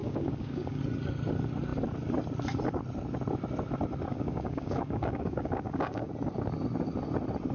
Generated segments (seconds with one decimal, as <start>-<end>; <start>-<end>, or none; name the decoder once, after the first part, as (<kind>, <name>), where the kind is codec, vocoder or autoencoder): 0.0-0.8 (codec, DAC); 4.1-6.1